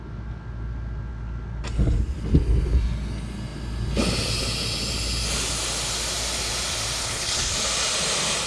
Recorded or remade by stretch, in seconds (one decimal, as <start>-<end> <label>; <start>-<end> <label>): 0.0-7.0 recorded; 7.0-7.5 remade; 7.5-8.5 recorded